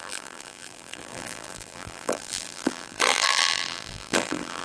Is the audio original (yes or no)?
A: no